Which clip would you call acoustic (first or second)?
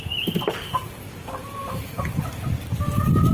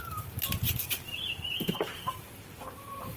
first